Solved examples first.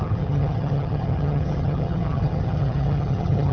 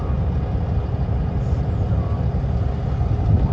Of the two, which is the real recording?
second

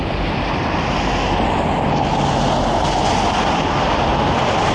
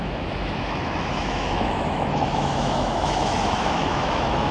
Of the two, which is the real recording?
first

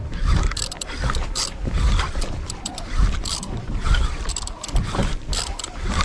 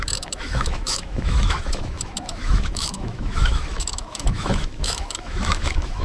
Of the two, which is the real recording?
first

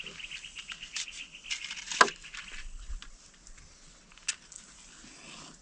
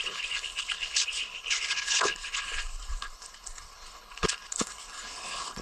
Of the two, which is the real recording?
first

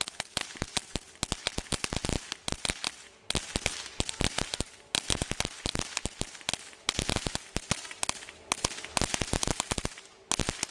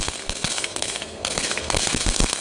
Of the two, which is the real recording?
first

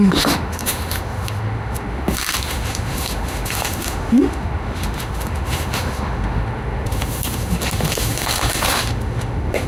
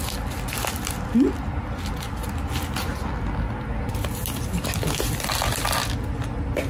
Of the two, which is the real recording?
second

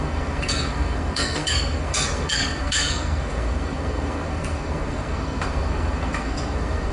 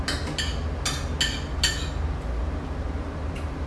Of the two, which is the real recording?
second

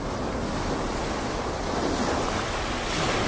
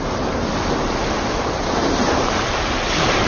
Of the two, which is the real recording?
first